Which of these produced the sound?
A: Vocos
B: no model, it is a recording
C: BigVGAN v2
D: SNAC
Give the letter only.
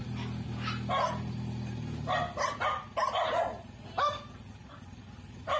B